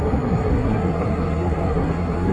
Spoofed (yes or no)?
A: yes